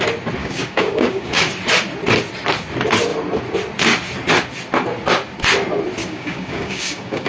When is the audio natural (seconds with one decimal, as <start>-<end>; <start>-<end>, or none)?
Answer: 0.0-0.4; 1.4-6.0